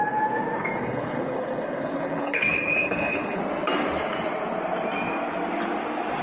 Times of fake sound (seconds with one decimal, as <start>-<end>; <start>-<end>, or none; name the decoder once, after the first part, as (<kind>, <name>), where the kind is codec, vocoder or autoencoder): 0.8-3.4 (codec, HILCodec)